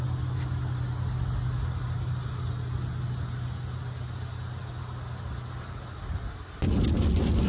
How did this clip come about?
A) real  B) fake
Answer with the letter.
A